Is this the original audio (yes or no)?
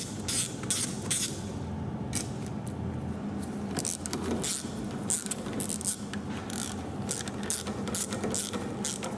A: yes